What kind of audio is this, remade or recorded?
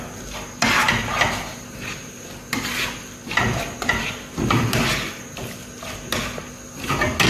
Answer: recorded